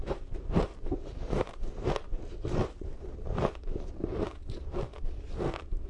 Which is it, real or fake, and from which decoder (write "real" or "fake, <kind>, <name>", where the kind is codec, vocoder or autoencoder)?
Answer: fake, vocoder, BigVGAN v2